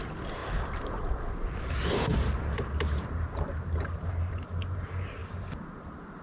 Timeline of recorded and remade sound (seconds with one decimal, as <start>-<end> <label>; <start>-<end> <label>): 0.0-0.4 recorded; 0.4-4.1 remade; 4.1-6.2 recorded